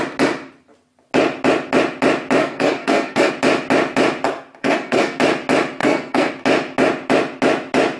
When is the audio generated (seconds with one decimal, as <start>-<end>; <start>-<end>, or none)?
2.4-3.3; 4.6-5.2; 5.8-6.3